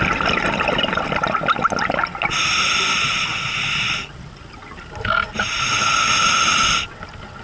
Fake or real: real